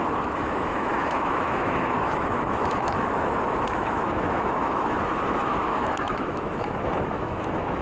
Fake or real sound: fake